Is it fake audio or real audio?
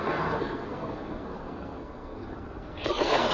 fake